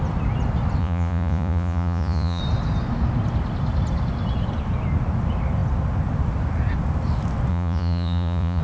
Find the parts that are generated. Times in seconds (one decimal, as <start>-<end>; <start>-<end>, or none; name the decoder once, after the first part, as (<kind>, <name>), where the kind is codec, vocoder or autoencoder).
0.8-2.4 (vocoder, Vocos); 7.5-8.6